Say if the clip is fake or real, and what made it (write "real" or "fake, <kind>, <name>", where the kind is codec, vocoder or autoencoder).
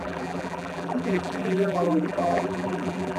fake, vocoder, BigVGAN v2